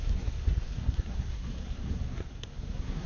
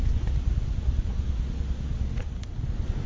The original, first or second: second